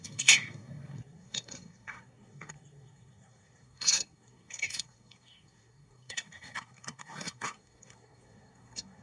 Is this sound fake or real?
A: fake